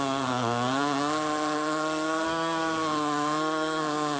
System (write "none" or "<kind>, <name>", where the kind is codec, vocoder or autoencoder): codec, SNAC